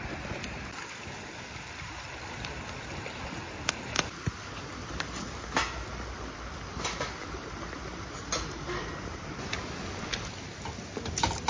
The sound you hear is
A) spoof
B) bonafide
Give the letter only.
B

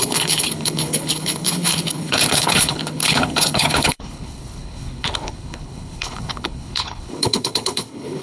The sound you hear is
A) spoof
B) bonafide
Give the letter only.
A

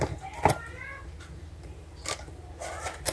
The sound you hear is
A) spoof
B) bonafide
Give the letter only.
B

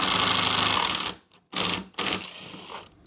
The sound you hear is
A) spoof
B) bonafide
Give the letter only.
B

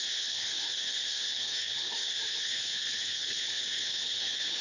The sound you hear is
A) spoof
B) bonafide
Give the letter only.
A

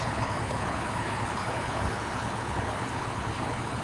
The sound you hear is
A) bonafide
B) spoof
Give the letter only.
B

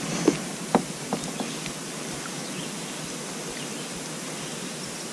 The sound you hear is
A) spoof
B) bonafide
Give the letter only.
B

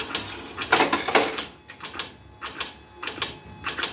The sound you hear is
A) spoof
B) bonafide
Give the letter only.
B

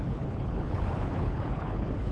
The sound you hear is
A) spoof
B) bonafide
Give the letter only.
A